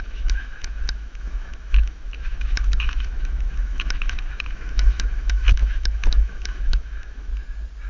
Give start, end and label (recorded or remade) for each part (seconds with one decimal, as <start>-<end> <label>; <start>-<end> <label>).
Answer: 0.0-7.3 remade; 7.3-7.9 recorded